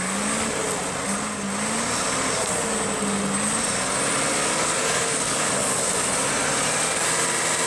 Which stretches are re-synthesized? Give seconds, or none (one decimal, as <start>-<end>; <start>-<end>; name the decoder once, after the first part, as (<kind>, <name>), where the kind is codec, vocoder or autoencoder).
0.0-0.6 (codec, DAC); 4.5-5.8